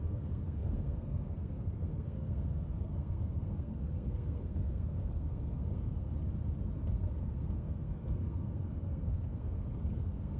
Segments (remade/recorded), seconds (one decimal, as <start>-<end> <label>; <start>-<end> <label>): 0.0-6.1 remade; 6.1-6.9 recorded; 6.9-10.4 remade